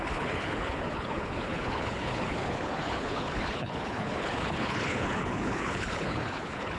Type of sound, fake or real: fake